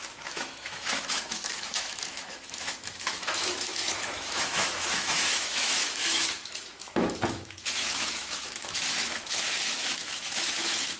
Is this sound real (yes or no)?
no